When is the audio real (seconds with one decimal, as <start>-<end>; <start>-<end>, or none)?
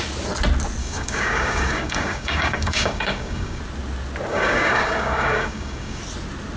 0.0-0.8; 3.6-4.3; 6.0-6.6